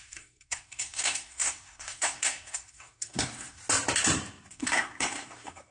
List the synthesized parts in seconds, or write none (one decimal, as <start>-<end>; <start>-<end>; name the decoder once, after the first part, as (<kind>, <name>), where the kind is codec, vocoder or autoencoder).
0.0-3.6 (codec, SNAC); 4.5-5.7